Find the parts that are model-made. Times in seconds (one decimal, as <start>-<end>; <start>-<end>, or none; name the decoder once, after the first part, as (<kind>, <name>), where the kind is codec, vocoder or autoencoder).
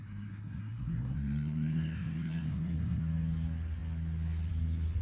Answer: 0.0-3.0 (codec, SNAC)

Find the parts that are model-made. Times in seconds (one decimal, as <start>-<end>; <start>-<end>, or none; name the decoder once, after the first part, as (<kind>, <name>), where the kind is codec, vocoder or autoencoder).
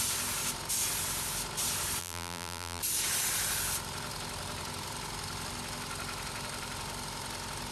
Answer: 2.0-2.8 (vocoder, BigVGAN v2)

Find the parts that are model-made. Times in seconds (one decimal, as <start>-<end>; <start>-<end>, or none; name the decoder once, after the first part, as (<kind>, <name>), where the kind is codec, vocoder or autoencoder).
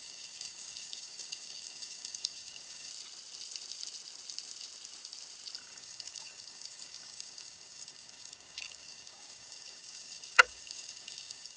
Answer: 0.0-2.9 (codec, DAC); 5.6-11.6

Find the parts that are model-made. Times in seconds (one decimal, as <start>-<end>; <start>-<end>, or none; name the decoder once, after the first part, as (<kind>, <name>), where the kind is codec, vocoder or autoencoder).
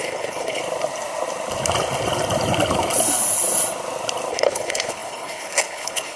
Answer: 0.0-0.6 (codec, HILCodec); 4.3-6.2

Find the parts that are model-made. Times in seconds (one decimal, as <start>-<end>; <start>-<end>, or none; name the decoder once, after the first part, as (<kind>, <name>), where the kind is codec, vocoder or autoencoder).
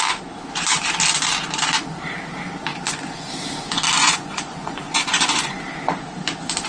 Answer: 2.7-3.3 (vocoder, Vocos); 4.0-5.6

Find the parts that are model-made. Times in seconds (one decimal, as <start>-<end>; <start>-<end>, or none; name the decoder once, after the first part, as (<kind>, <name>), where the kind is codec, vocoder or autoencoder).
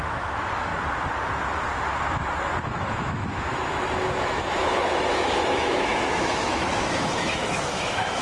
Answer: 0.0-0.7 (autoencoder, DAC-VAE); 2.6-8.2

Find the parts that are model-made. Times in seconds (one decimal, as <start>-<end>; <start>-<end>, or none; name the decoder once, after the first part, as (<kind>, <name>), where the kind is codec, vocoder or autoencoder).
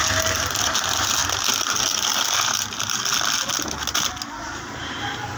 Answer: none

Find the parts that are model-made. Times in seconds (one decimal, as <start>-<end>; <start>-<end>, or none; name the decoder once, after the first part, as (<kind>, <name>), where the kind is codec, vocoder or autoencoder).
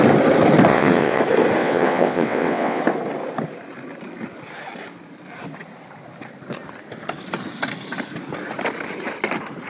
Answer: 0.7-1.2 (vocoder, WaveNeXt); 1.6-2.8